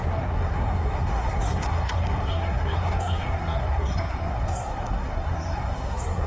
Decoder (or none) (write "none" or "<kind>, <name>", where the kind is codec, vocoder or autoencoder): codec, SNAC